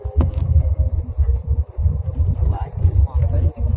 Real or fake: real